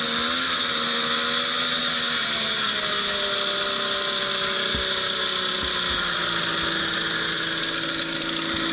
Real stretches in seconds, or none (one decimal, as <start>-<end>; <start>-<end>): 0.0-8.7